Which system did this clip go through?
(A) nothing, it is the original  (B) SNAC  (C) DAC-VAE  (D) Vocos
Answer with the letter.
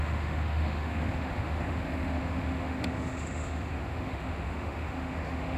C